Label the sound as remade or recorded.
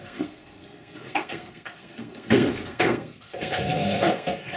remade